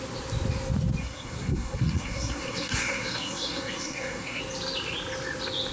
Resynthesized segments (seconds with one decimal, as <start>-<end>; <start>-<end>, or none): 1.0-4.4